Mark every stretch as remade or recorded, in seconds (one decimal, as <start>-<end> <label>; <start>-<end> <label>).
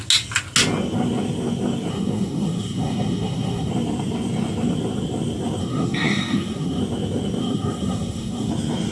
0.0-1.9 recorded; 1.9-3.7 remade; 3.7-5.6 recorded; 5.6-6.8 remade; 6.8-7.4 recorded; 7.4-8.5 remade; 8.5-8.9 recorded